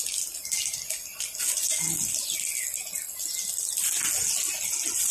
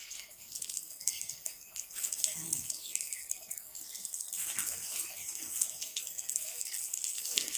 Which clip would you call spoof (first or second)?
second